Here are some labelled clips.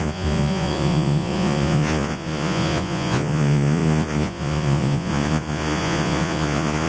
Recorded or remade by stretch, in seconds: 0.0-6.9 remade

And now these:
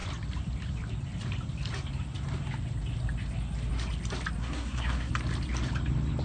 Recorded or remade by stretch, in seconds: 0.0-4.4 recorded; 4.4-5.1 remade; 5.1-6.2 recorded

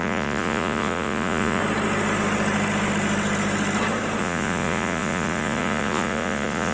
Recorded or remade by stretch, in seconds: 0.0-1.6 remade; 1.6-4.2 recorded; 4.2-6.7 remade

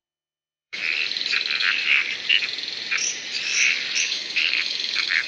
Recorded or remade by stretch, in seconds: 0.0-0.8 remade; 0.8-4.0 recorded; 4.0-5.3 remade

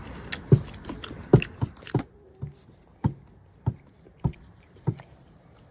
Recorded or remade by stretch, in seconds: 0.0-5.7 recorded

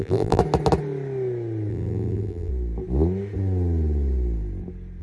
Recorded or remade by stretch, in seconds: 0.0-0.4 remade; 0.4-1.7 recorded; 1.7-2.5 remade; 2.5-5.0 recorded

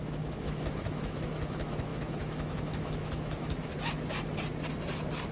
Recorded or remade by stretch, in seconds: 0.0-3.7 remade; 3.7-5.3 recorded

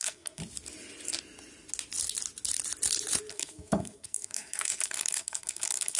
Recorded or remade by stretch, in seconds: 0.0-0.4 remade; 0.4-3.3 recorded; 3.3-6.0 remade